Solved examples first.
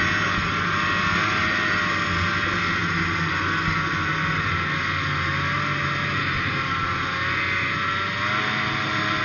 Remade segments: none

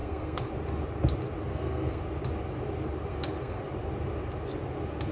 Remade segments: 0.0-0.5 (codec, SNAC); 1.5-2.0; 3.1-3.6

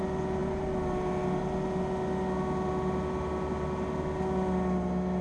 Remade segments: none

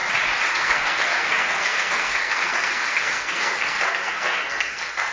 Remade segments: 0.5-5.1 (codec, SNAC)